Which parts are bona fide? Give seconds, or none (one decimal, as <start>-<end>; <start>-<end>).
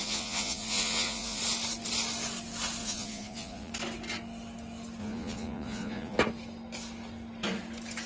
1.4-2.8; 3.7-5.0; 6.2-8.1